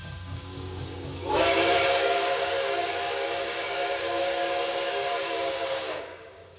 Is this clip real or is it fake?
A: fake